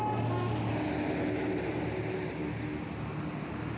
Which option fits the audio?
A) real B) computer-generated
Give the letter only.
A